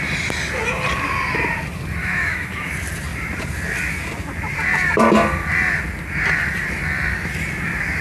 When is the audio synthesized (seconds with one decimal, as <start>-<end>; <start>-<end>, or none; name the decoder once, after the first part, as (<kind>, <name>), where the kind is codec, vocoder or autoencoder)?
2.0-2.7 (autoencoder, DAC-VAE)